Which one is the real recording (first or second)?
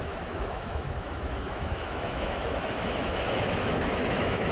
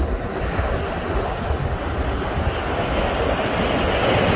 second